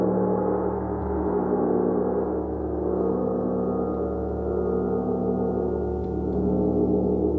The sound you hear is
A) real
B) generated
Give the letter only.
A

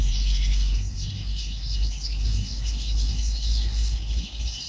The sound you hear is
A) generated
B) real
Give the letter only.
A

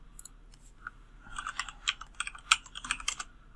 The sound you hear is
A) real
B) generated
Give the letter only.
A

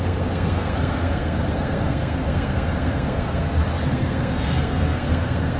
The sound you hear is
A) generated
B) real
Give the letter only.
A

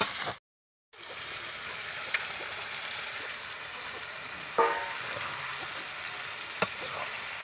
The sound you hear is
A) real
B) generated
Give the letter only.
A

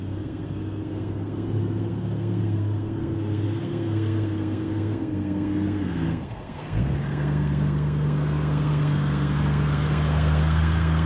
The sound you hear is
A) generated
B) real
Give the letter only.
A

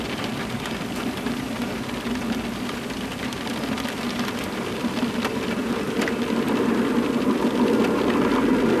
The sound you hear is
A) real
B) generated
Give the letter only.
A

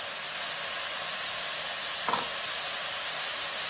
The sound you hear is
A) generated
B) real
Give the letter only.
B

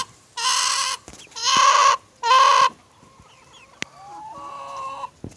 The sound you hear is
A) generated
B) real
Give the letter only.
B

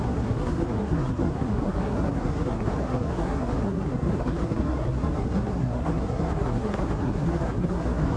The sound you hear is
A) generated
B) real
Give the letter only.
A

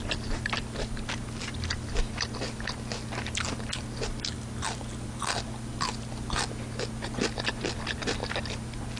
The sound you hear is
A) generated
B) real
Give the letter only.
B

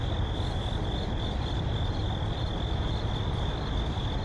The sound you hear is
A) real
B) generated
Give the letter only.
A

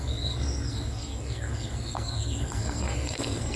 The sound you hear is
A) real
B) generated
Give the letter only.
B